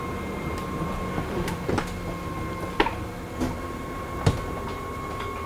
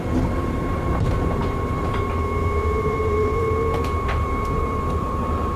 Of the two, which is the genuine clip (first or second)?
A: first